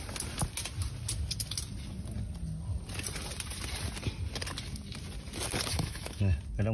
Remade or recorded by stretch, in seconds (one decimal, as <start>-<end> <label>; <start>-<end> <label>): 0.0-5.7 recorded; 5.7-6.2 remade; 6.2-6.7 recorded